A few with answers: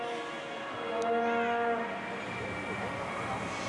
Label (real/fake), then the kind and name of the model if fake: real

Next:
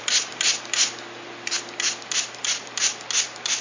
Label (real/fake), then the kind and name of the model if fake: real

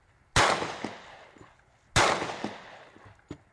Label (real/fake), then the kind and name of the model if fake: real